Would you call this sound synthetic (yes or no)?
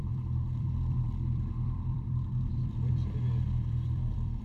yes